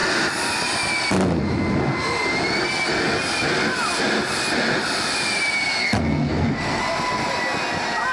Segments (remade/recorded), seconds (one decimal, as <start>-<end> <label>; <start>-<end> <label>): 0.0-5.8 recorded; 5.8-6.8 remade; 6.8-8.1 recorded